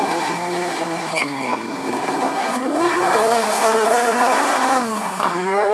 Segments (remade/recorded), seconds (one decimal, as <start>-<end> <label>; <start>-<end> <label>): 0.0-5.7 remade